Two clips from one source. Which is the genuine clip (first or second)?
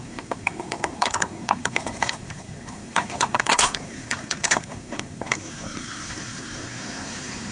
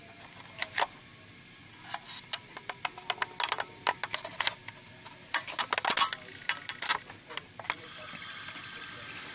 second